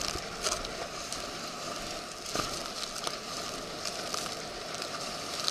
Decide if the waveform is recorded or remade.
recorded